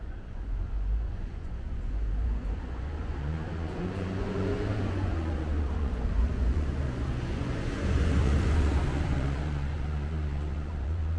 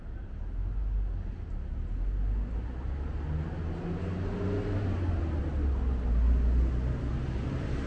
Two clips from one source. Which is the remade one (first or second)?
first